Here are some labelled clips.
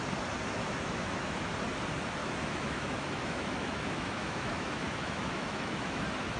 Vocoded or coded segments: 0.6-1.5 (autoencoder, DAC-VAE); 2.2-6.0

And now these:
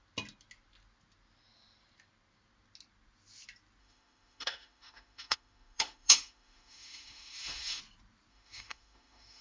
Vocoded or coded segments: 3.8-7.8 (autoencoder, DAC-VAE); 8.3-9.4